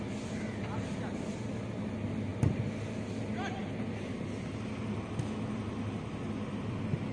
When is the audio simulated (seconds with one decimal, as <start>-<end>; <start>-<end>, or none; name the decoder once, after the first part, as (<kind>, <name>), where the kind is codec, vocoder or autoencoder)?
none